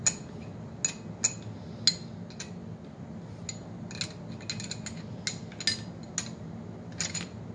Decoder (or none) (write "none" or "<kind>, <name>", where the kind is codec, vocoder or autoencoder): none